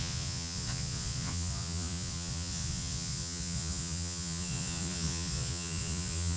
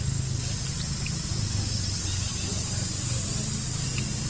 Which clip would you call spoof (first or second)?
first